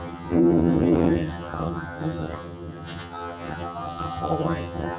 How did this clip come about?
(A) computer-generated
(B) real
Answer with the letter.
A